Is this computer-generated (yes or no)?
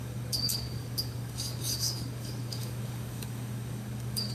yes